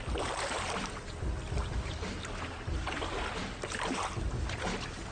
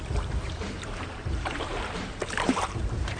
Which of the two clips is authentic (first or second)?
first